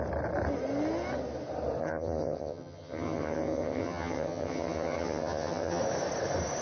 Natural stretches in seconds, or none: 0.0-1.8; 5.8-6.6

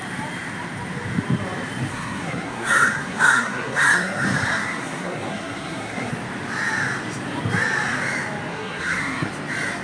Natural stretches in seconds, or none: 0.0-1.9; 6.1-8.5; 9.3-9.8

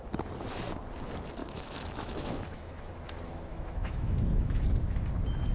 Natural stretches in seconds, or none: 0.0-1.4; 2.9-3.5; 4.6-5.5

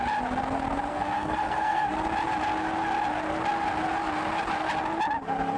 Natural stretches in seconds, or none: 0.0-0.9; 1.9-5.6

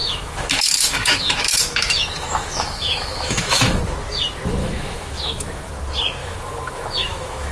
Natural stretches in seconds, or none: 3.8-4.6; 5.7-6.2

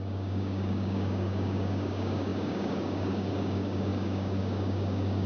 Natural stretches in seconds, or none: none

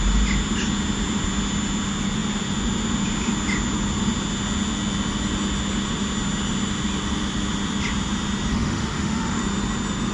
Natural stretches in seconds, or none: 0.0-8.5; 9.4-10.1